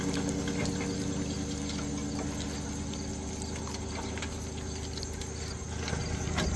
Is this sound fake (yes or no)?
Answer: no